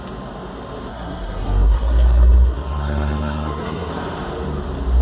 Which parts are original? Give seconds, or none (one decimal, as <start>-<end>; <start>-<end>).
0.0-0.9; 3.9-5.0